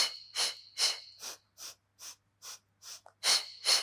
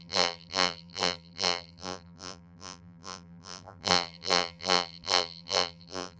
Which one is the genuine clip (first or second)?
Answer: first